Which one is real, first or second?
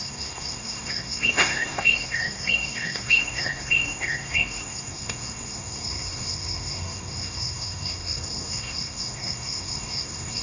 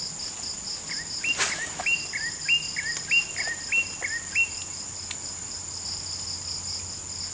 second